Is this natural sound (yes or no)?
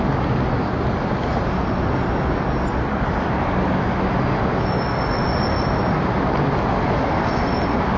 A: yes